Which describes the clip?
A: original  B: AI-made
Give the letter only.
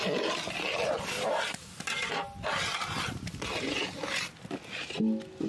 A